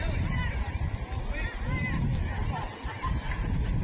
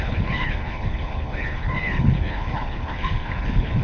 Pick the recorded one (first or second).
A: first